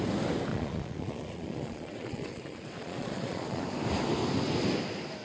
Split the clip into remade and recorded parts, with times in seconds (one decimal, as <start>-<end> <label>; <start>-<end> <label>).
0.0-0.5 recorded; 0.5-3.6 remade; 3.6-5.2 recorded